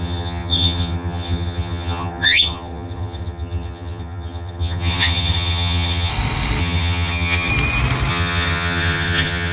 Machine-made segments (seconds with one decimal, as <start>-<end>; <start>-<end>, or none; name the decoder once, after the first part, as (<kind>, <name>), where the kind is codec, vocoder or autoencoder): 0.0-6.1 (vocoder, HiFi-GAN); 6.6-7.5; 8.1-9.5